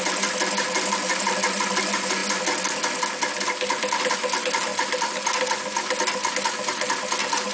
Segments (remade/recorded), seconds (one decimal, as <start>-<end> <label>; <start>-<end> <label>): 0.0-7.5 recorded